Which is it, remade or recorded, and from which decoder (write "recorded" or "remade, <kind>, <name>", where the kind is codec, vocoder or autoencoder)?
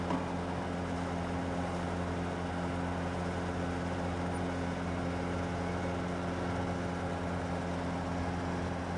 recorded